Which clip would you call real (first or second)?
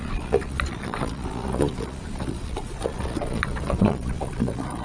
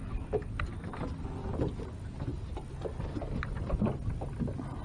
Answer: second